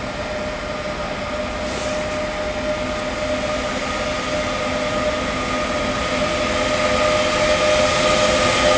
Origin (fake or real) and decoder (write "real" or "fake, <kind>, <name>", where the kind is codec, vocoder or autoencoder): real